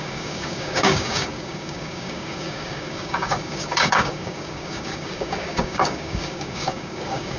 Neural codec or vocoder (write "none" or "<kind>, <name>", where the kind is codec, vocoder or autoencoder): codec, DAC